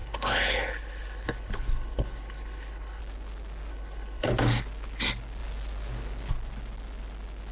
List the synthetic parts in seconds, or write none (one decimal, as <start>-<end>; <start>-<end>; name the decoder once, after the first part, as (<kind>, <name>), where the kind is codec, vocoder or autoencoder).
0.0-3.0 (codec, HILCodec); 3.7-4.3